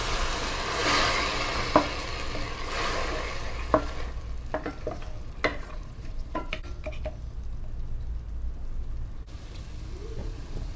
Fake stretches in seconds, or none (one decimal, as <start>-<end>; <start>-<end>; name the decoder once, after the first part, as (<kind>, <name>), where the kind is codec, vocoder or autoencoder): 5.5-6.5 (vocoder, Vocos); 10.2-10.8